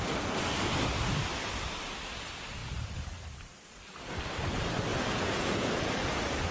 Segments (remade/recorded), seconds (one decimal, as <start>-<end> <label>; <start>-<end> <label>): 0.0-4.9 recorded; 4.9-5.8 remade; 5.8-6.5 recorded